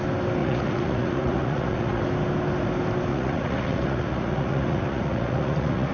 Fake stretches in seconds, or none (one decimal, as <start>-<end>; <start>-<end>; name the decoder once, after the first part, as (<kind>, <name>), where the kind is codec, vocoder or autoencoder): 0.4-2.0 (vocoder, Vocos); 3.1-5.9